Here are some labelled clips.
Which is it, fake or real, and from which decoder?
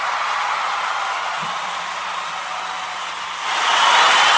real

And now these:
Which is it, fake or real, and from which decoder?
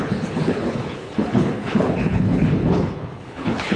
fake, codec, HILCodec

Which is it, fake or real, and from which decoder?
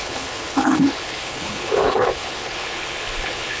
fake, codec, HILCodec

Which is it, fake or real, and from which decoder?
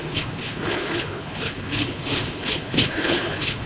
fake, codec, HILCodec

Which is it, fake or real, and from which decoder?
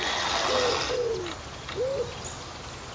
real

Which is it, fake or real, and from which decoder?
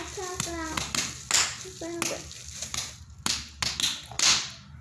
real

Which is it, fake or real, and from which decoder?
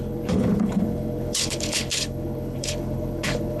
fake, codec, HILCodec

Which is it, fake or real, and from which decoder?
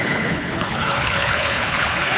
fake, codec, HILCodec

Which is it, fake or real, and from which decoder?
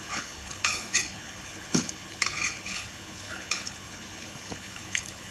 fake, codec, HILCodec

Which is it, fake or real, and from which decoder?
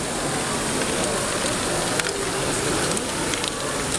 real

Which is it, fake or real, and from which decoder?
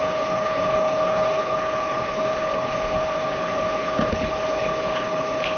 fake, codec, HILCodec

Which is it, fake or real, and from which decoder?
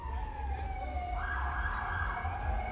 real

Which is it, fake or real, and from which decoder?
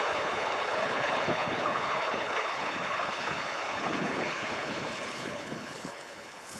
fake, codec, HILCodec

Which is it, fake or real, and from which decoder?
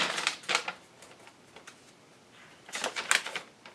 real